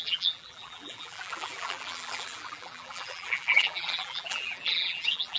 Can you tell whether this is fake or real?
fake